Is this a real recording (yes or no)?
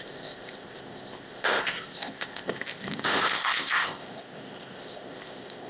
no